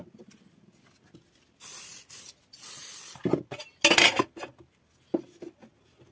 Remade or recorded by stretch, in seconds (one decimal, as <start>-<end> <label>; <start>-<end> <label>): 0.0-6.1 recorded